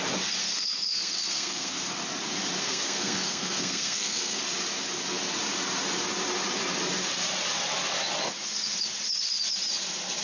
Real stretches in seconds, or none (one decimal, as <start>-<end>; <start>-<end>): 0.0-0.4; 1.7-2.6; 4.4-10.2